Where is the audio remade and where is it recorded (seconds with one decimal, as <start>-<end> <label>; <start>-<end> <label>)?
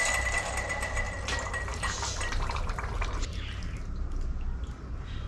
0.0-1.7 recorded; 1.7-4.2 remade; 4.2-5.3 recorded